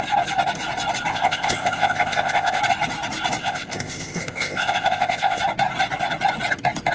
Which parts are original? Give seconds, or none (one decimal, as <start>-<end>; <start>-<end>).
0.0-1.1; 2.6-3.4; 5.4-6.9